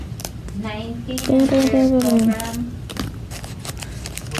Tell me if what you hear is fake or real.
real